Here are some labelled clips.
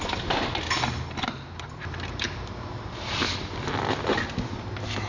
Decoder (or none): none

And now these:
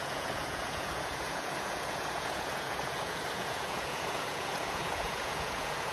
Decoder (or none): vocoder, Vocos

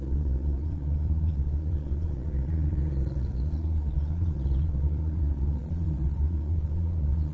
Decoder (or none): vocoder, Vocos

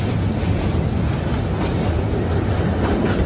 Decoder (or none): none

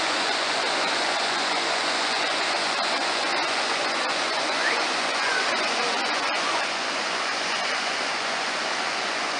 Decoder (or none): vocoder, Vocos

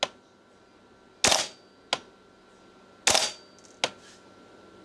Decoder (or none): none